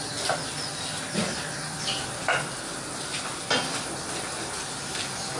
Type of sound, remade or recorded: recorded